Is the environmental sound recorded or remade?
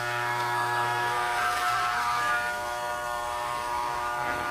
remade